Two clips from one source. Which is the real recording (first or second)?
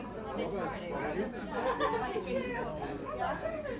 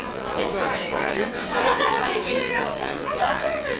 first